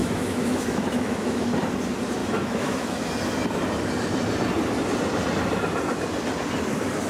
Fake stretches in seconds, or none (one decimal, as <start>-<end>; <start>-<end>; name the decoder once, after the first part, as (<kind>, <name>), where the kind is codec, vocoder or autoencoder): 0.0-1.5 (autoencoder, DAC-VAE); 2.2-3.1